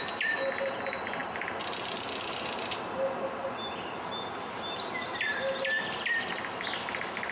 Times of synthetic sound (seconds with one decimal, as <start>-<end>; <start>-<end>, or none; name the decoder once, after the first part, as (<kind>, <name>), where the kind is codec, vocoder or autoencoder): none